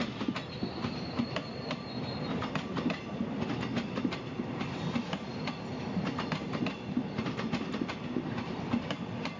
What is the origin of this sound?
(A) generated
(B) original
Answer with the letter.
B